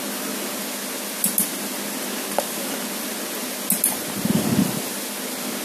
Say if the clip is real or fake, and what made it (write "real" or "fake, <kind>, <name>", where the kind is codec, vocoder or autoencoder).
real